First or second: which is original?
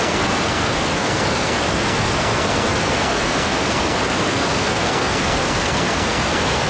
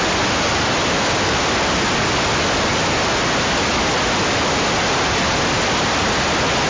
second